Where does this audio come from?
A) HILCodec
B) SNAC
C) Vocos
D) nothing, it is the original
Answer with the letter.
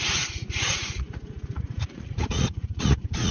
C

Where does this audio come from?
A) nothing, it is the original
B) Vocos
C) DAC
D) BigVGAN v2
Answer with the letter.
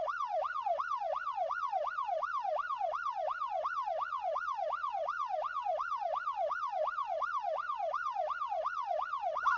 B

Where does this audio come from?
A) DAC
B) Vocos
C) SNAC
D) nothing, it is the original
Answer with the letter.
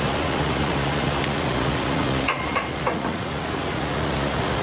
B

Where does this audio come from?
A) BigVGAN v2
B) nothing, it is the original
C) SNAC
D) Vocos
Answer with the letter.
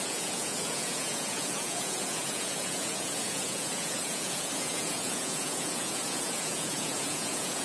D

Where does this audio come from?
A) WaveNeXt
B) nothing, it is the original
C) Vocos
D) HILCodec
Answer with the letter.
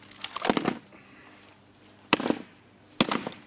B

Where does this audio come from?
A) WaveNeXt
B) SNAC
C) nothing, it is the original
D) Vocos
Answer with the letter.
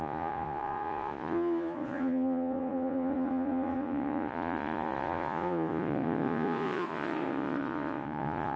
D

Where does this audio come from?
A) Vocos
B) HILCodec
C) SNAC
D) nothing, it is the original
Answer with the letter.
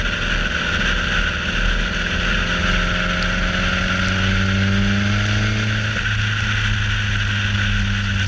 D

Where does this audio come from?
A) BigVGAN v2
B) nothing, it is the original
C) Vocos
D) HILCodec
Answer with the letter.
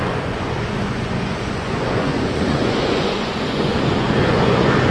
C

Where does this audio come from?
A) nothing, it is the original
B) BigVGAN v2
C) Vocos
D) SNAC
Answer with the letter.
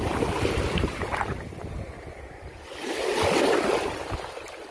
A